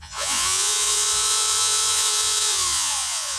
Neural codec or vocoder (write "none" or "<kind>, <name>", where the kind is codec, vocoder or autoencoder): vocoder, Vocos